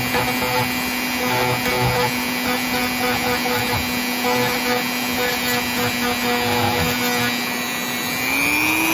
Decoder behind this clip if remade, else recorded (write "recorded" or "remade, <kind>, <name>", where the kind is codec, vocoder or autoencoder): recorded